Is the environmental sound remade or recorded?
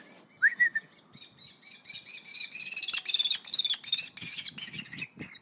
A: recorded